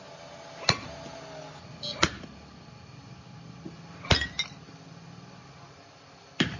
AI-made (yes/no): no